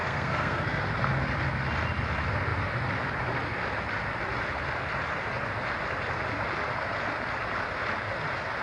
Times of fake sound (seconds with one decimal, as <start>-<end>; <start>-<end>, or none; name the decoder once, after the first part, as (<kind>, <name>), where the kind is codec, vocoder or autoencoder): 0.0-0.8 (codec, SNAC)